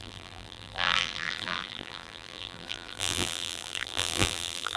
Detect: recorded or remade remade